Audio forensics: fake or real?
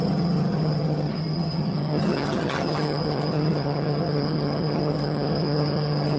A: fake